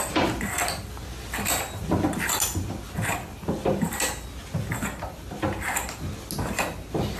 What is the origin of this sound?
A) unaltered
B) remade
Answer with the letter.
A